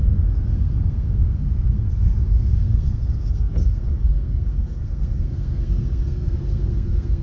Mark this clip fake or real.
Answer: fake